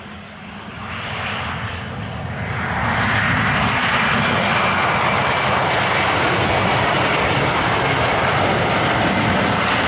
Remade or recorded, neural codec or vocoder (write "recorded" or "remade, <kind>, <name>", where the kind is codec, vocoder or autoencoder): recorded